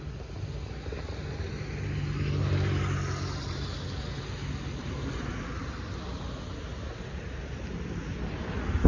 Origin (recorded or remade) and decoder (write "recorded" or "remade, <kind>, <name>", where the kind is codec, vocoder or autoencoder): recorded